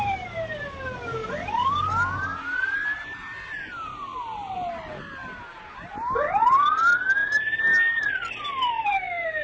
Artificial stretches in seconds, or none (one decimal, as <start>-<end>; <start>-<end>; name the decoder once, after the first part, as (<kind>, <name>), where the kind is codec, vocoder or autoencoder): none